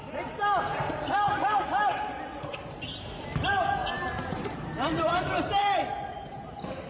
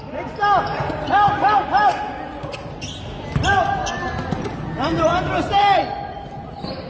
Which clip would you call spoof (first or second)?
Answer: first